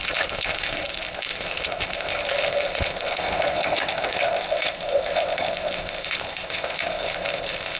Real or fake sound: fake